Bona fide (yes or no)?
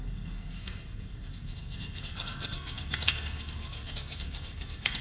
no